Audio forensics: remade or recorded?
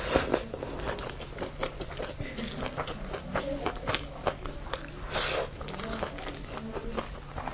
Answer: recorded